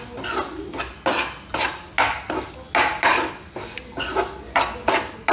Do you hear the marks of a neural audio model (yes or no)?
no